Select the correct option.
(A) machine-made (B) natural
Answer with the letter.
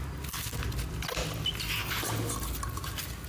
B